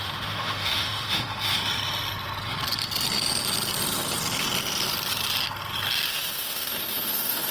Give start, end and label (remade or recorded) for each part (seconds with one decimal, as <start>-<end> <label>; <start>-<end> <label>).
0.0-1.6 remade; 1.6-6.1 recorded; 6.1-7.5 remade